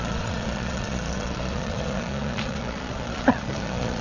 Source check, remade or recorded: remade